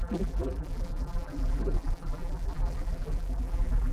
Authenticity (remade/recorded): remade